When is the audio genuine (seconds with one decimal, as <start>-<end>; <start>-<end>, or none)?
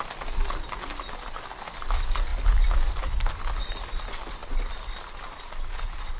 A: 0.0-4.4; 5.0-6.2